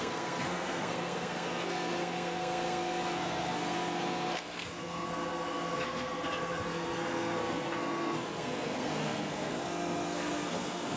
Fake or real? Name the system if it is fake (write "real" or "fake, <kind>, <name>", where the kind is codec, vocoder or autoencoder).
fake, codec, SNAC